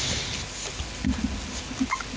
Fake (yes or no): no